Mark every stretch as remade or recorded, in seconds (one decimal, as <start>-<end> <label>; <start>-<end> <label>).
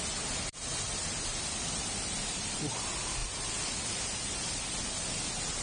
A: 0.0-3.2 remade; 3.2-5.6 recorded